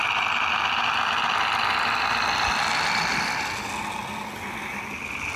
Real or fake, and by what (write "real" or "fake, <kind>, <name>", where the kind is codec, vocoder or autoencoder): real